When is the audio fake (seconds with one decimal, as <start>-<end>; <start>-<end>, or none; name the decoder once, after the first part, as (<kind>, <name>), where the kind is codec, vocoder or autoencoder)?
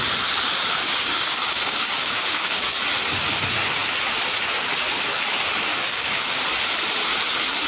0.8-2.8 (codec, DAC); 5.7-6.3